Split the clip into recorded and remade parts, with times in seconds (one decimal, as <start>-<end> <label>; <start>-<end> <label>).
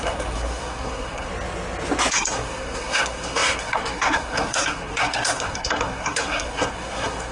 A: 0.0-1.3 remade; 1.3-2.1 recorded; 2.1-7.3 remade